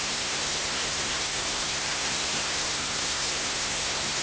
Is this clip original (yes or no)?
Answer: no